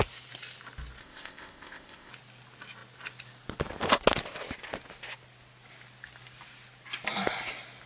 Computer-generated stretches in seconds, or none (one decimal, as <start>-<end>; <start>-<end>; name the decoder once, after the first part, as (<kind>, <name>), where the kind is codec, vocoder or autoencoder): 1.0-2.1 (codec, ZipCodec)